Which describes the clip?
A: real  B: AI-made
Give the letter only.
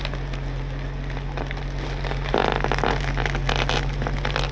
A